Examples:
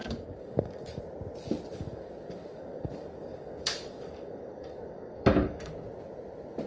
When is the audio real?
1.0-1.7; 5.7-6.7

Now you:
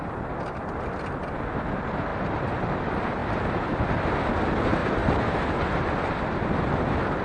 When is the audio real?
0.0-2.1; 2.8-4.8; 5.9-7.2

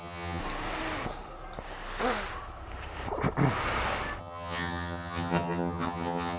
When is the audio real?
0.4-4.2

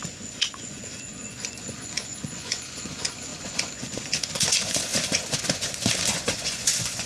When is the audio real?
none

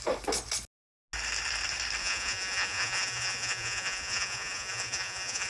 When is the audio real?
0.0-2.0

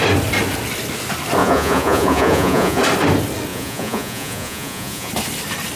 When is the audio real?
0.0-1.4; 2.8-3.5; 5.1-5.8

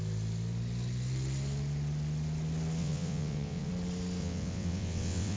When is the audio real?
0.0-2.8; 3.7-4.2

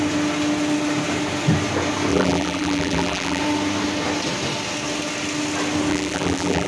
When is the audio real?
0.0-2.1; 3.4-5.9